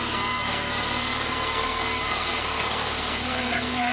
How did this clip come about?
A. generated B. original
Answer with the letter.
A